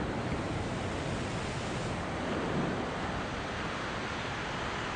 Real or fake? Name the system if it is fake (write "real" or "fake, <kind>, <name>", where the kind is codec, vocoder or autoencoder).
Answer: real